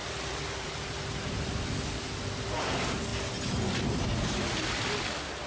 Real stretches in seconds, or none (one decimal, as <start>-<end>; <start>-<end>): 1.5-5.5

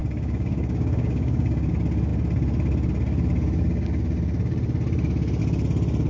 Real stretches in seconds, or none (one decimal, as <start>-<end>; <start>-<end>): 1.7-6.1